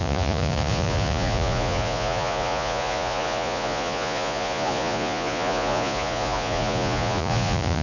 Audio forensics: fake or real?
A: fake